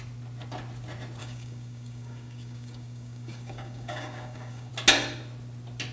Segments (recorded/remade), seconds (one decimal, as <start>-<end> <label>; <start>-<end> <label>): 0.0-1.2 recorded; 1.2-4.7 remade; 4.7-5.9 recorded